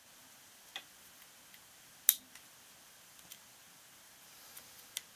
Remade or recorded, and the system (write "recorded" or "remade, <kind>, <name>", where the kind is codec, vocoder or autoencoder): recorded